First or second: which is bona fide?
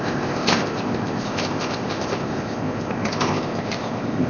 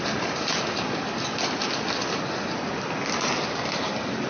second